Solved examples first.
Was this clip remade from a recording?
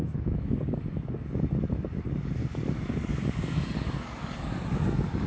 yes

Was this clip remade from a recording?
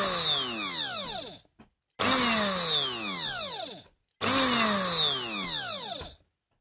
no